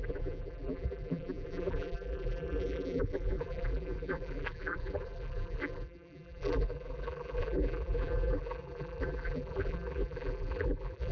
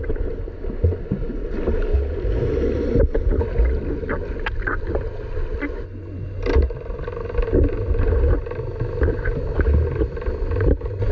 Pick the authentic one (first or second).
second